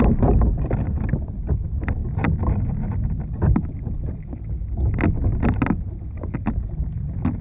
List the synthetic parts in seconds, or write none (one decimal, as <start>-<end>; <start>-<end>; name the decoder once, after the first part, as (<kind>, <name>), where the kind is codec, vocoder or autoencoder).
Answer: none